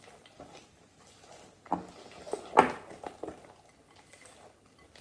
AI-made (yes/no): no